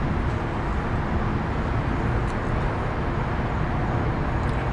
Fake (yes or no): no